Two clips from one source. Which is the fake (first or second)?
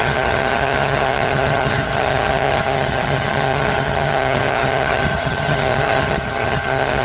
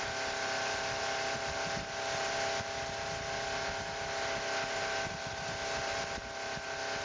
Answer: first